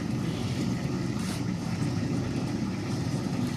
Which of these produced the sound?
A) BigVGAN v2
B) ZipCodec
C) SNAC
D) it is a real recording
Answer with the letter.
A